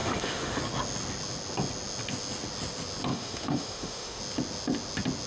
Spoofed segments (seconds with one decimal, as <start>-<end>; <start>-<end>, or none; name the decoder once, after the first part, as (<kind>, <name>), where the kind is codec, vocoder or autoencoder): 0.0-0.6 (autoencoder, DAC-VAE); 3.1-4.2